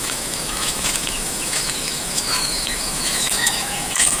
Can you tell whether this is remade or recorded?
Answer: remade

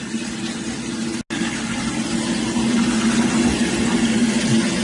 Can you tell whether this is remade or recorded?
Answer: recorded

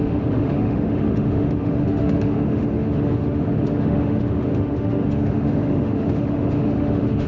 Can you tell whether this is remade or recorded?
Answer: remade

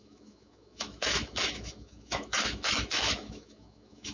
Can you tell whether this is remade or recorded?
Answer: remade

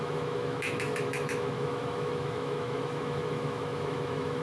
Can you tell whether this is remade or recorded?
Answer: remade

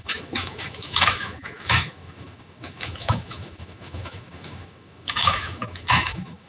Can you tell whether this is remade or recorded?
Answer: remade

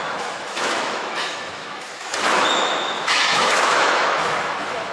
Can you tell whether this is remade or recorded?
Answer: remade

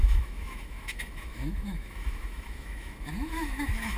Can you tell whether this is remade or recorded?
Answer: remade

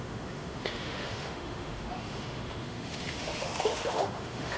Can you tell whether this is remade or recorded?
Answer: remade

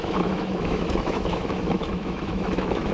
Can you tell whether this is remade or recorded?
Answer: remade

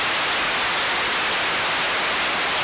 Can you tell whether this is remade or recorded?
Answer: recorded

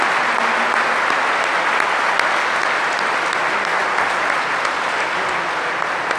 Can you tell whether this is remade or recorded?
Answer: recorded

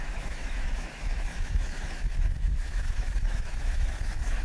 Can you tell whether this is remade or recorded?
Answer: remade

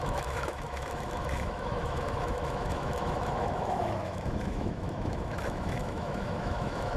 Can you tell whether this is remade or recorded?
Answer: remade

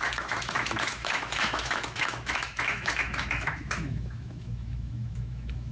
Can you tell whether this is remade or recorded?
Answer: remade